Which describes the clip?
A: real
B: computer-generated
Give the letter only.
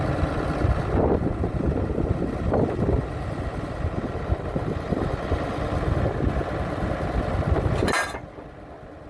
A